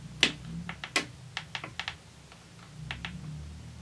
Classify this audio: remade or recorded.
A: recorded